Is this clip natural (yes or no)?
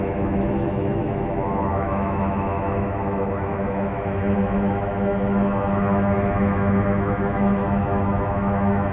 no